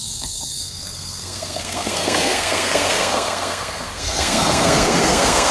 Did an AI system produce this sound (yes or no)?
yes